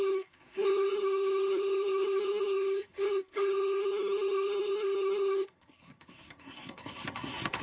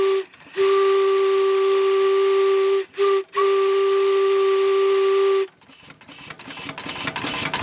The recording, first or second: second